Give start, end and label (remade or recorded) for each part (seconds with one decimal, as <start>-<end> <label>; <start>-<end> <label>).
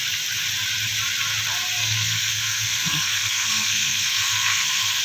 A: 0.0-1.8 recorded; 1.8-5.0 remade